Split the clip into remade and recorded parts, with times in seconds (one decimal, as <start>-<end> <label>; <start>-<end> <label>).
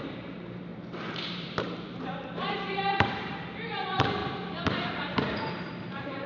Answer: 0.0-0.7 remade; 0.7-1.2 recorded; 1.2-4.2 remade; 4.2-5.0 recorded; 5.0-6.3 remade